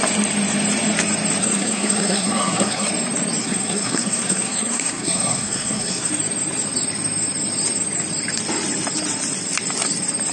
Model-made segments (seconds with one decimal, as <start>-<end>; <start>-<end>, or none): 1.4-2.9; 3.4-6.1